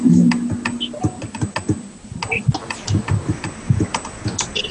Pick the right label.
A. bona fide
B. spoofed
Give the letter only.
A